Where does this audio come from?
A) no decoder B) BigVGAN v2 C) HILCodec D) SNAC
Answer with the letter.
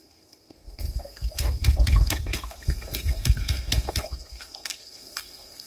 D